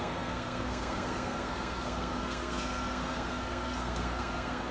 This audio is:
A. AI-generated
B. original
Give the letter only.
A